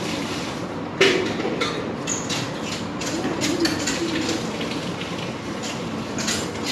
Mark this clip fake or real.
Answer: real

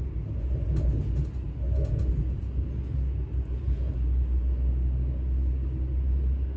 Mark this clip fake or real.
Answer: real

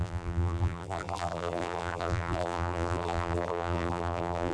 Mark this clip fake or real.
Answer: fake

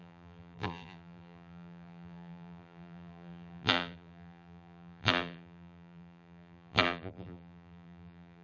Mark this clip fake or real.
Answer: fake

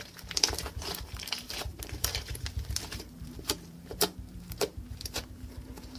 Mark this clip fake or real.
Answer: fake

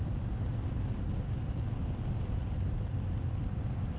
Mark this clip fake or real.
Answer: fake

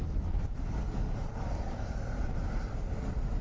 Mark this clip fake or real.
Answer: real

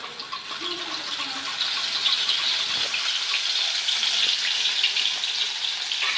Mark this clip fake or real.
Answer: real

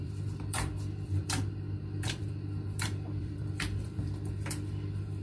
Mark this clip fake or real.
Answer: fake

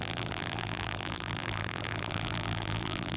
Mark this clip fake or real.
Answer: fake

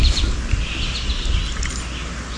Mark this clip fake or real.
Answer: real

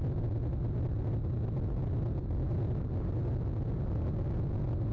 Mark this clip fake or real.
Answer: real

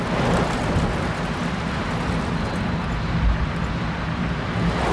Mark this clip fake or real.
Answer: real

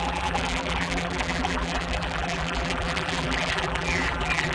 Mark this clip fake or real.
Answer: fake